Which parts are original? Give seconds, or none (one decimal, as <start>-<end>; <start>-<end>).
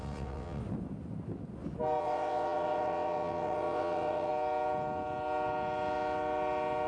0.6-2.0; 4.3-6.9